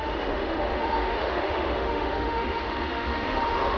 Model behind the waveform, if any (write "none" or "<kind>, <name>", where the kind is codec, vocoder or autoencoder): autoencoder, DAC-VAE